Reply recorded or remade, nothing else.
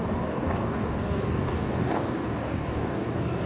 remade